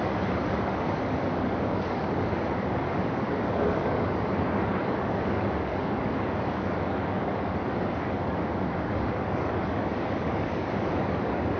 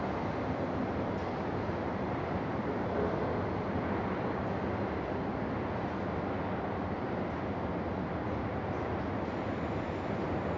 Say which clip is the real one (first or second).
second